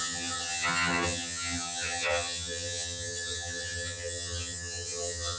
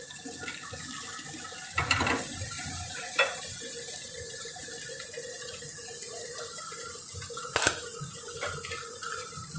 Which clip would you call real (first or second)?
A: second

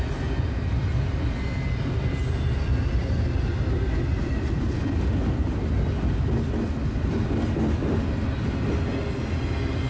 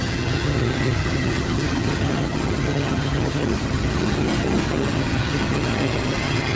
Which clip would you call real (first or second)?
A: first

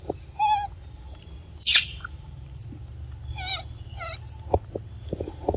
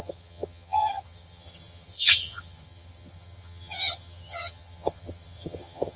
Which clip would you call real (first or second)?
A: first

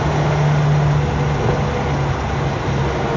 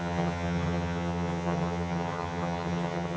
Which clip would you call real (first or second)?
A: first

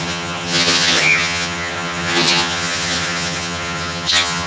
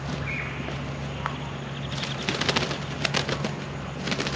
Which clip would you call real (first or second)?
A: second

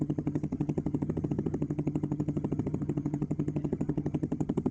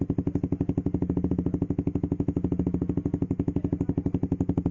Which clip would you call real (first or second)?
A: second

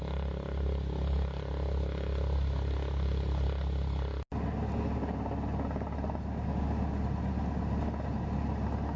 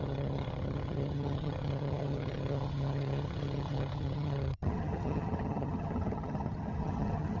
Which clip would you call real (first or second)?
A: first